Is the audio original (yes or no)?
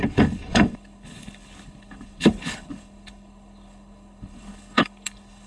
no